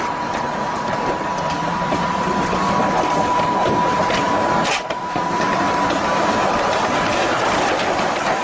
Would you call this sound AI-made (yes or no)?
yes